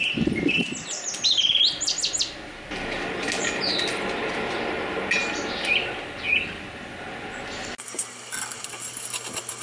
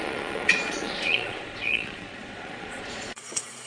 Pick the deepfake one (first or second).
second